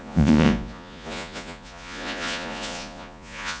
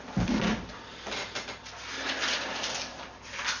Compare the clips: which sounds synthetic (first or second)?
first